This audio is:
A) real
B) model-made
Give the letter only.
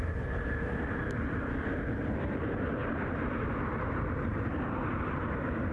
B